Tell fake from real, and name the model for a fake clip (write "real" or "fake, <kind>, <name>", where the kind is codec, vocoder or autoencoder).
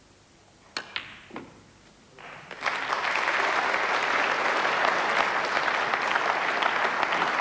real